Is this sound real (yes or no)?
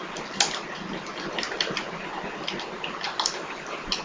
yes